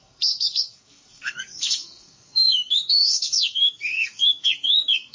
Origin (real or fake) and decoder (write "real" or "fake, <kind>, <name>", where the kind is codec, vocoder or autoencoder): fake, codec, SNAC